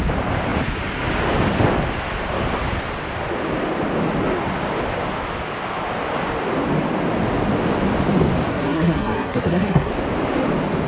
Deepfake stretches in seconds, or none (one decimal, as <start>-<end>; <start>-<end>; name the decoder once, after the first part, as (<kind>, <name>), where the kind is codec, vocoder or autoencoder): 8.5-9.9 (codec, SNAC)